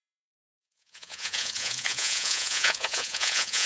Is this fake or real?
fake